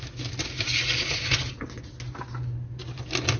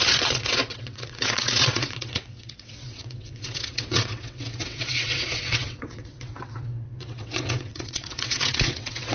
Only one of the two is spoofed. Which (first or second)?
second